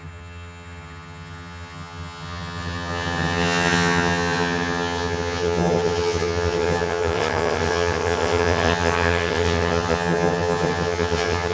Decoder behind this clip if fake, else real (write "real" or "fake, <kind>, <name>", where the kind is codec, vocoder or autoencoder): fake, vocoder, HiFi-GAN